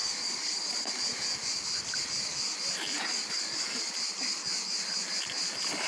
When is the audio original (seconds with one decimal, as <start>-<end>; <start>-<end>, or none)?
0.9-3.1; 3.9-5.9